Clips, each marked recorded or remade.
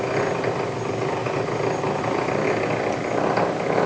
recorded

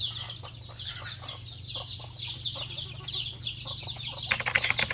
recorded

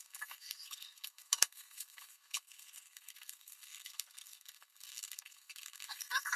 remade